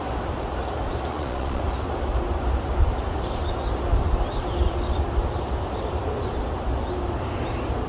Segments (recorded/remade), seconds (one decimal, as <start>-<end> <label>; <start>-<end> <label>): 0.0-1.1 recorded; 1.1-1.6 remade; 1.6-7.9 recorded